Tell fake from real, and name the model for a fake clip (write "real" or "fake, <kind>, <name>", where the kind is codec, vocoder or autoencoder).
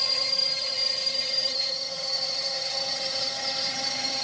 fake, vocoder, HiFi-GAN